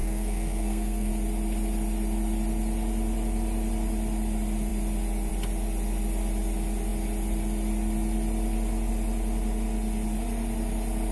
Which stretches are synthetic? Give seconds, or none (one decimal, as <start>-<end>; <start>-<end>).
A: 0.0-1.1